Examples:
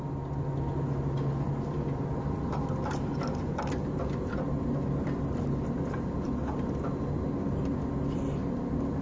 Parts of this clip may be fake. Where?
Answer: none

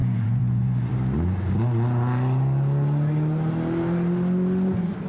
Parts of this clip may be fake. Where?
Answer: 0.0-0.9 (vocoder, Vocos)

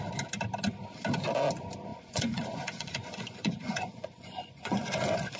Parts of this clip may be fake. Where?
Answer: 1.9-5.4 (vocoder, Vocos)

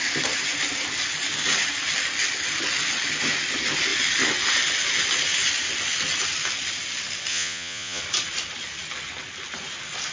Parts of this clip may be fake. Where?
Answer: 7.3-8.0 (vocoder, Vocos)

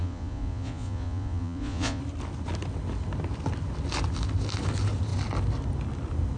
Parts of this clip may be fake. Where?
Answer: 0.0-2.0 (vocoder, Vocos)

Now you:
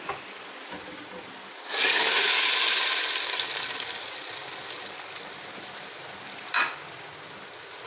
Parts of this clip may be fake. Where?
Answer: none

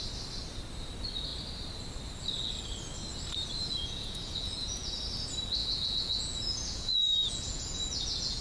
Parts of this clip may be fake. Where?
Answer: 3.8-5.0 (vocoder, Vocos); 5.6-8.4

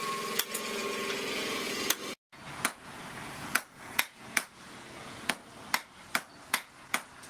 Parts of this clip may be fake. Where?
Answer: 0.0-5.4 (vocoder, Vocos); 6.5-7.3